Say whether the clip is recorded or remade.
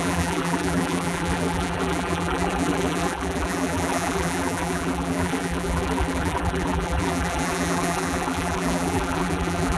remade